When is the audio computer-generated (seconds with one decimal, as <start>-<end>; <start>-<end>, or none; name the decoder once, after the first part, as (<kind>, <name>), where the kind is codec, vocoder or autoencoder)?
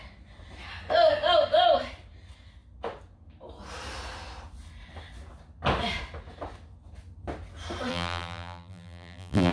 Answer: 7.9-9.5 (vocoder, BigVGAN v2)